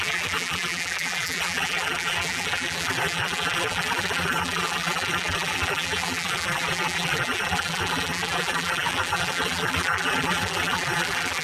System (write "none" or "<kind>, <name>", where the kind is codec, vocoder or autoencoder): vocoder, BigVGAN v2